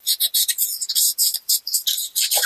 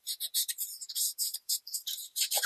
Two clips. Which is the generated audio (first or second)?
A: second